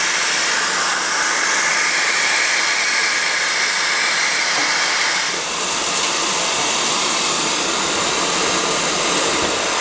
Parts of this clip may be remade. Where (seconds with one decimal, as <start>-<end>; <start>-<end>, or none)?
0.0-0.9; 1.7-4.6; 5.2-9.8